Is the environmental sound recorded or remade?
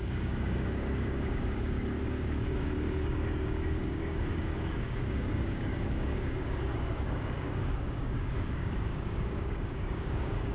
remade